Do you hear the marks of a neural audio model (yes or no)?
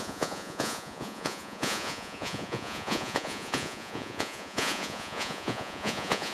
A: yes